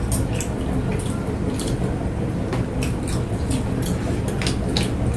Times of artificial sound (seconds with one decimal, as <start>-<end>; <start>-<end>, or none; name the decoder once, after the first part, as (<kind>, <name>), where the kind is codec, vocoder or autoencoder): 0.9-4.0 (vocoder, BigVGAN v2)